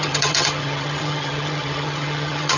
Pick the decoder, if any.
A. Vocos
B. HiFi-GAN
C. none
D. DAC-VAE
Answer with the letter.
B